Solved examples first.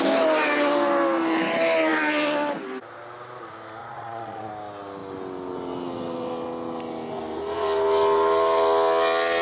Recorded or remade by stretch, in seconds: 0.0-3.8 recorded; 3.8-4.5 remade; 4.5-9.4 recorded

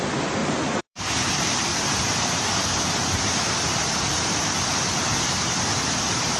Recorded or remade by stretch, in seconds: 0.0-0.4 recorded; 0.4-1.0 remade; 1.0-1.7 recorded; 1.7-5.5 remade; 5.5-6.4 recorded

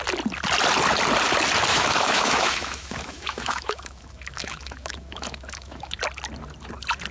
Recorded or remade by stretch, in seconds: 0.0-1.7 recorded; 1.7-6.0 remade; 6.0-7.1 recorded

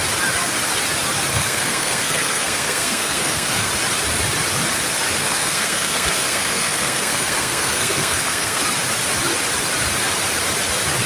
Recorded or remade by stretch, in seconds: 0.0-1.3 recorded; 1.3-3.7 remade; 3.7-5.2 recorded; 5.2-8.6 remade; 8.6-11.1 recorded

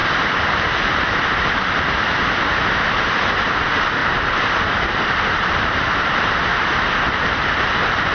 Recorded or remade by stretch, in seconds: 0.0-6.5 remade; 6.5-8.1 recorded